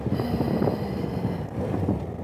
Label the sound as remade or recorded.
recorded